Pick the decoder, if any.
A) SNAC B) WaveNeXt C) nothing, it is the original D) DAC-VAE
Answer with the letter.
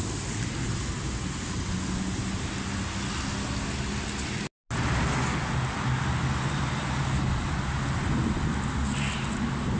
C